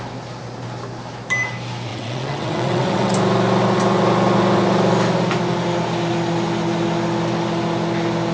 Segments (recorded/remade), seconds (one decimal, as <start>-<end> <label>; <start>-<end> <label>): 0.0-1.9 recorded; 1.9-3.1 remade; 3.1-8.3 recorded